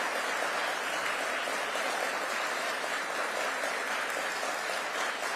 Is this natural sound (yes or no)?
yes